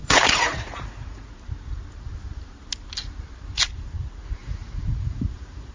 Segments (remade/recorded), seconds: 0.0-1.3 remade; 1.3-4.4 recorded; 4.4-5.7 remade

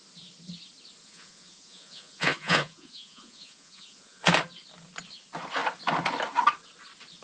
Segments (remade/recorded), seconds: 0.0-1.0 recorded; 1.0-4.2 remade; 4.2-7.2 recorded

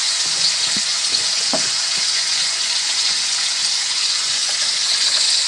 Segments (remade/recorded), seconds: 0.0-5.5 remade

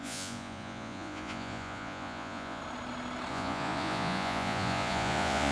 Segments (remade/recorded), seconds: 0.0-2.6 remade; 2.6-3.3 recorded; 3.3-5.5 remade

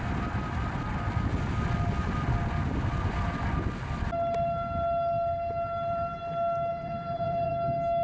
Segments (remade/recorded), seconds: 0.0-6.7 recorded; 6.7-7.5 remade; 7.5-8.0 recorded

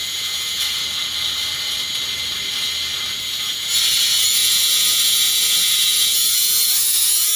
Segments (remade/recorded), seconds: 0.0-0.8 remade; 0.8-3.2 recorded; 3.2-7.4 remade

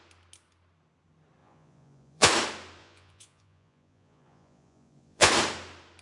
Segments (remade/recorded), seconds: 0.0-1.4 recorded; 1.4-2.3 remade; 2.3-2.8 recorded; 2.8-5.3 remade; 5.3-6.0 recorded

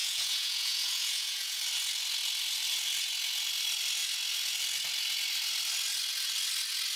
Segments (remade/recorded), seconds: 0.0-1.6 remade; 1.6-7.0 recorded